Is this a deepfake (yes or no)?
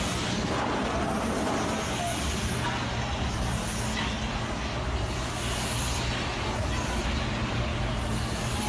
no